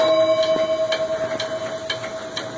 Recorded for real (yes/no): yes